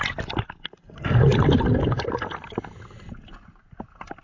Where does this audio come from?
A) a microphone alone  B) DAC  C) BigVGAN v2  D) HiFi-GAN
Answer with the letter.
A